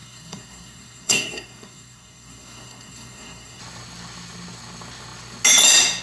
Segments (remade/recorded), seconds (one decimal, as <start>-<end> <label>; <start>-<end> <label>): 0.0-3.6 remade; 3.6-6.0 recorded